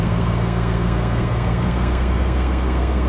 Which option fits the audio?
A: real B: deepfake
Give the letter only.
B